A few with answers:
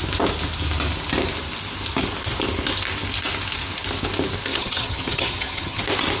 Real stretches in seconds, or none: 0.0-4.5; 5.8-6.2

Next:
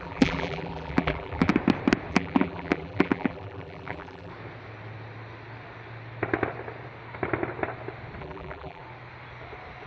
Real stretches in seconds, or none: 1.5-2.1; 4.3-8.2; 8.8-9.9

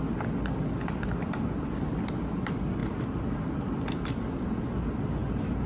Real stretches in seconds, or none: 0.0-2.8; 4.6-5.7

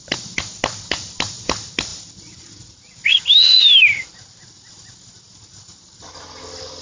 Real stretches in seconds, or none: 0.0-6.8